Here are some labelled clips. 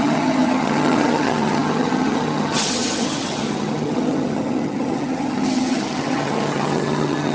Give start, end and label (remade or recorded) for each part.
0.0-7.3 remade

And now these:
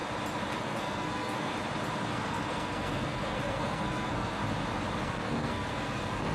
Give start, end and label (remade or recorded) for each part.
0.0-0.6 recorded; 0.6-1.5 remade; 1.5-2.0 recorded; 2.0-4.4 remade; 4.4-5.0 recorded; 5.0-6.3 remade

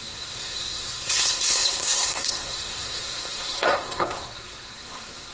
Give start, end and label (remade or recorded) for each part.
0.0-5.3 remade

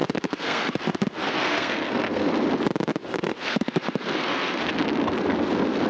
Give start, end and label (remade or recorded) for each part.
0.0-2.3 remade; 2.3-3.1 recorded; 3.1-4.6 remade; 4.6-5.9 recorded